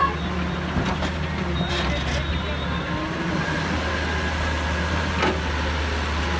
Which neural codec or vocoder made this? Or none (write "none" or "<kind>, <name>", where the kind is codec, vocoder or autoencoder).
none